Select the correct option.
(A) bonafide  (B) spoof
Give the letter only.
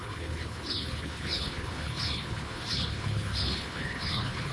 B